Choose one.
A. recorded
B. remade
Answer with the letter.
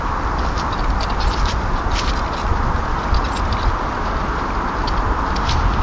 A